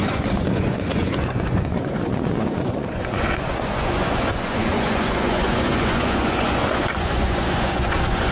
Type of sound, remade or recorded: remade